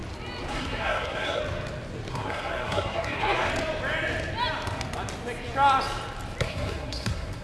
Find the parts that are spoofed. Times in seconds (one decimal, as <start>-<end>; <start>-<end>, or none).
0.5-1.4; 2.1-3.5; 6.4-7.4